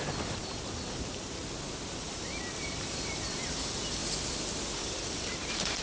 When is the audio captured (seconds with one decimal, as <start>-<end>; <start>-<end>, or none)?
1.4-2.0; 4.0-4.7